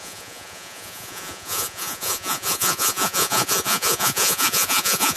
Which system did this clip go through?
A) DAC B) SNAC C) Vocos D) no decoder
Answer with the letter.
C